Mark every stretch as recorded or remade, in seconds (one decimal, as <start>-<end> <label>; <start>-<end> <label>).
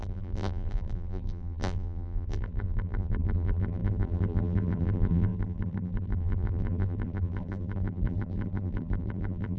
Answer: 0.0-9.6 remade